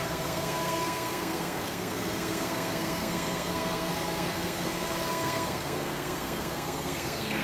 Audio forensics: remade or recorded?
remade